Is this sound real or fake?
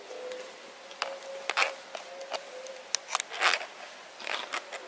real